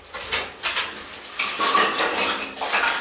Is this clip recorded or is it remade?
recorded